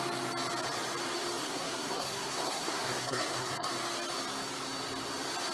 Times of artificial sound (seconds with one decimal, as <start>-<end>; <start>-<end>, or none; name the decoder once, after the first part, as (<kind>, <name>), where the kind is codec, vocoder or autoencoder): 1.4-3.7 (codec, SNAC)